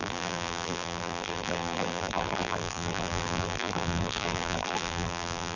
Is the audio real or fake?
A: fake